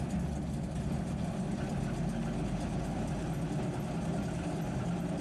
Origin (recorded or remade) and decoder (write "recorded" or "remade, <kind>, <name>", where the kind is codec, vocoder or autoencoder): recorded